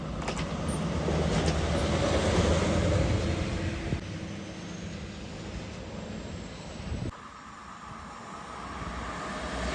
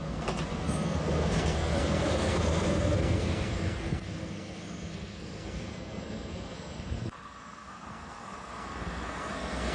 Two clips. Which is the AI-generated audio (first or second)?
second